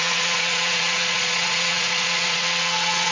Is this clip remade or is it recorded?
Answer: remade